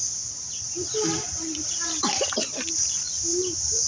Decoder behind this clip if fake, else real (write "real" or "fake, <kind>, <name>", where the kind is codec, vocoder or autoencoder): real